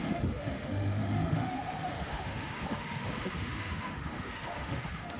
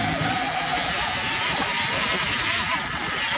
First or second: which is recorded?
second